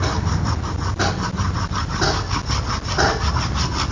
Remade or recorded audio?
recorded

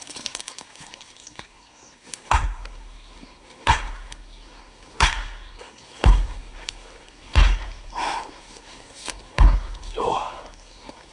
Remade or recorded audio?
remade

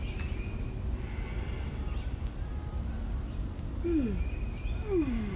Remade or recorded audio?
recorded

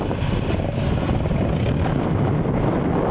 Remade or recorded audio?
recorded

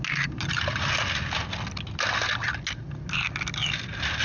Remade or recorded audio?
recorded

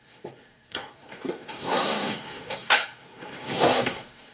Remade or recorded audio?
remade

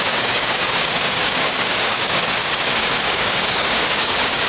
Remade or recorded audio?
remade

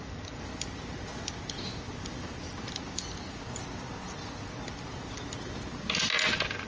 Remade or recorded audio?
recorded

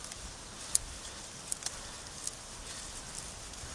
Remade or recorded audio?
recorded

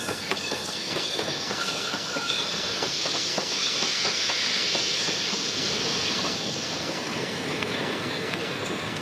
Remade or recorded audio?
remade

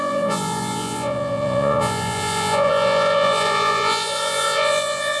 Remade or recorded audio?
remade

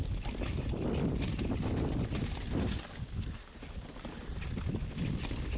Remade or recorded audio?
recorded